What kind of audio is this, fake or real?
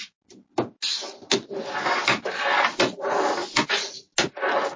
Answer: real